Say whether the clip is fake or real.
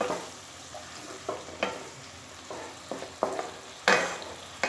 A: real